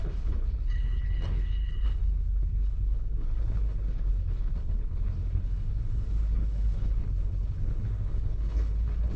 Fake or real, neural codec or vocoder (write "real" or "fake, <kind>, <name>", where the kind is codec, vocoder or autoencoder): fake, codec, HILCodec